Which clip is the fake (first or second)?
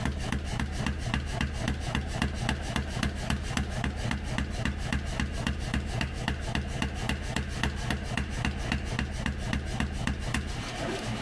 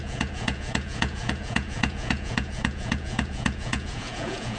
second